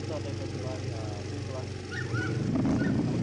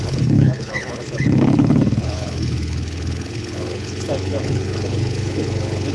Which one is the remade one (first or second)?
second